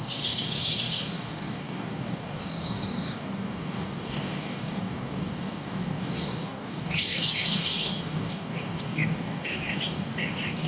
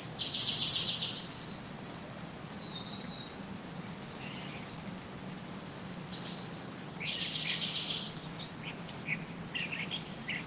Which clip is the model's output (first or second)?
first